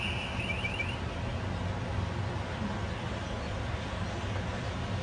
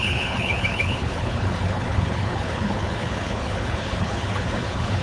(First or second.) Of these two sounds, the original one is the first